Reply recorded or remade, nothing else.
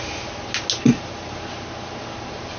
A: recorded